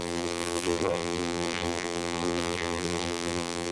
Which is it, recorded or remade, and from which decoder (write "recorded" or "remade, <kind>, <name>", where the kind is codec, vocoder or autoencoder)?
remade, vocoder, BigVGAN v2